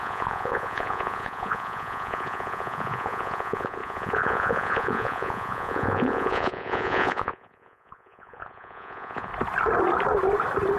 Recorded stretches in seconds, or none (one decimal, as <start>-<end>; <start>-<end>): 9.3-10.8